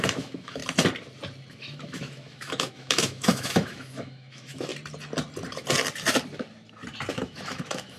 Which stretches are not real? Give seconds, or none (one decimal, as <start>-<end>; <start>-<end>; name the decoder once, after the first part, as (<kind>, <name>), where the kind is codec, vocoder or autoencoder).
0.0-0.6 (autoencoder, DAC-VAE); 1.5-4.7; 7.1-8.0